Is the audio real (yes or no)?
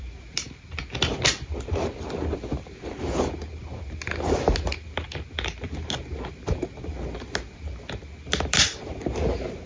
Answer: yes